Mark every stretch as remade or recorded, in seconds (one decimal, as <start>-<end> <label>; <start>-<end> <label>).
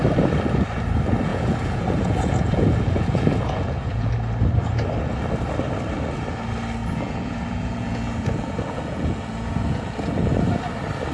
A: 0.0-1.3 recorded; 1.3-4.1 remade; 4.1-6.8 recorded; 6.8-10.5 remade; 10.5-11.1 recorded